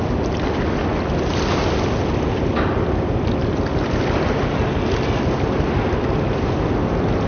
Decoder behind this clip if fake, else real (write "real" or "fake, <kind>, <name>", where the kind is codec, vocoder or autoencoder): real